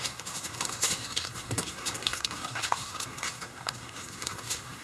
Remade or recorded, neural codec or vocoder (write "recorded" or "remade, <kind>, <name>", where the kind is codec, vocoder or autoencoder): remade, codec, SNAC